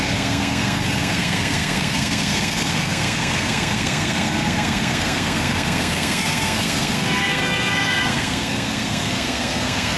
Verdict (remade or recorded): remade